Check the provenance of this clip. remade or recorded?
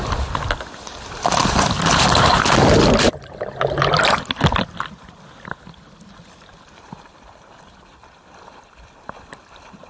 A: recorded